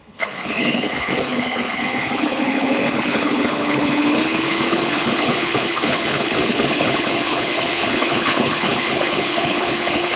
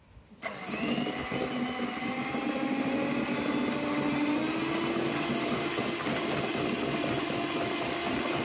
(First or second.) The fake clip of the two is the first